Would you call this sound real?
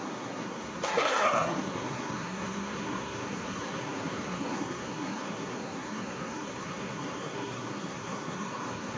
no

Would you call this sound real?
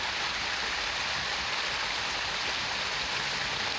yes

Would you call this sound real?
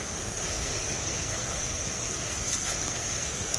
no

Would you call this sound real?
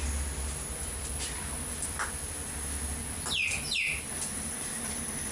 yes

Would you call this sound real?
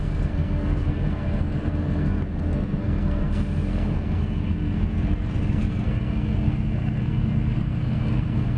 no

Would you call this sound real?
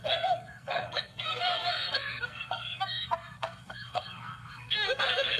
no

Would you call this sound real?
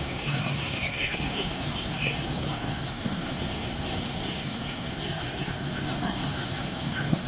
no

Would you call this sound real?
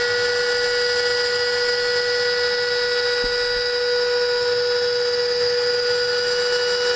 yes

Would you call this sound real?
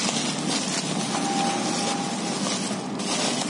yes